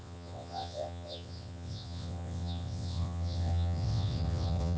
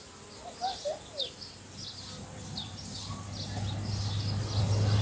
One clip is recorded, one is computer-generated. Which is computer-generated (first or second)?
first